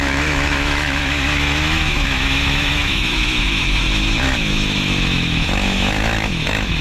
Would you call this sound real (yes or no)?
no